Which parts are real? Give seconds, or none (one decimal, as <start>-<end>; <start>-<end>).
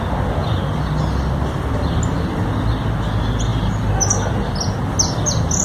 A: 0.0-5.6